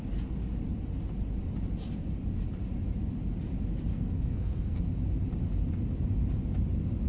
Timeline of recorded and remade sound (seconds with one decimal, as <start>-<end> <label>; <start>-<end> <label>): 0.0-3.9 recorded; 3.9-4.8 remade; 4.8-7.1 recorded